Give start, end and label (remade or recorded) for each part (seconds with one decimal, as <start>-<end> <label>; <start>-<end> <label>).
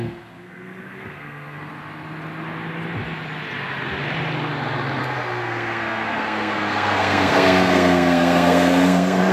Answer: 0.0-1.7 remade; 1.7-5.0 recorded; 5.0-9.3 remade